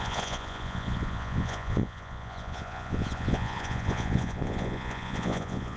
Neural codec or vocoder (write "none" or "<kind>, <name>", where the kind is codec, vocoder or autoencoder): vocoder, Vocos